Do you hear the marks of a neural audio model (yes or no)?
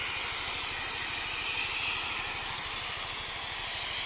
no